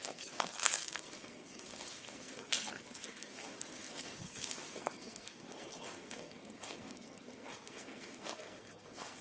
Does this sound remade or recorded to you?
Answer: remade